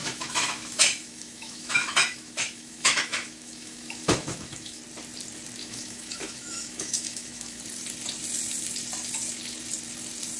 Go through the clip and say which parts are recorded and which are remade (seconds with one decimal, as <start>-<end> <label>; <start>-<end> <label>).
0.0-4.8 remade; 4.8-5.6 recorded; 5.6-7.6 remade; 7.6-10.4 recorded